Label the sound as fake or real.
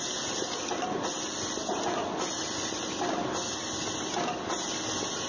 real